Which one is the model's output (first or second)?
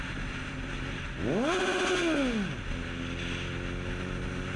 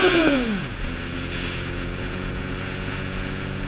second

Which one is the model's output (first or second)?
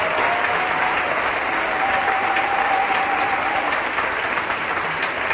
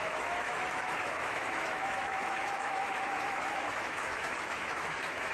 second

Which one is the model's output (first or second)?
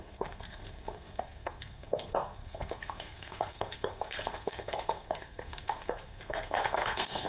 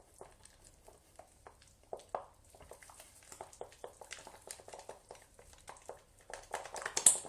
first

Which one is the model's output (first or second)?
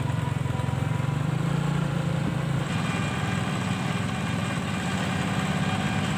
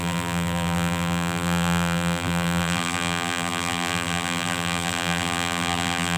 second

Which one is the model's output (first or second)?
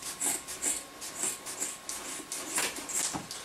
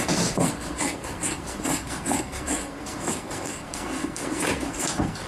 second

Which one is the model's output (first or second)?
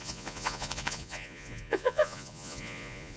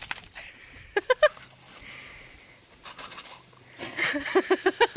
first